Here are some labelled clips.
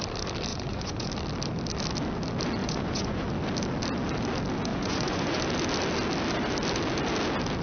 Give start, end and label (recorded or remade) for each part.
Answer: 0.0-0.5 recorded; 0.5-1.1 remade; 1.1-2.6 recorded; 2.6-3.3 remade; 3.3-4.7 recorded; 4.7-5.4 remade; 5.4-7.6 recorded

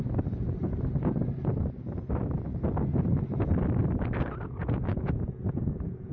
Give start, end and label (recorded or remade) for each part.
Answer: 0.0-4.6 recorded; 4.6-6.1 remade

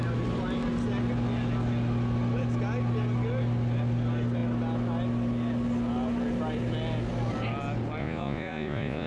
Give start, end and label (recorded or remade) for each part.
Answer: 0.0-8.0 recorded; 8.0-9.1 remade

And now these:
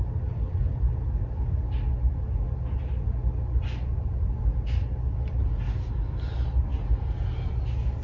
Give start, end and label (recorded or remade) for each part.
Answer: 0.0-8.0 recorded

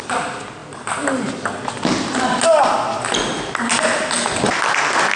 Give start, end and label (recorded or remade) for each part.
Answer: 0.0-5.2 recorded

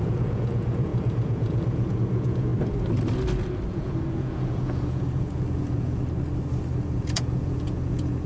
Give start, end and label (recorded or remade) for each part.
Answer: 0.0-2.5 remade; 2.5-3.7 recorded; 3.7-6.0 remade; 6.0-6.8 recorded; 6.8-8.3 remade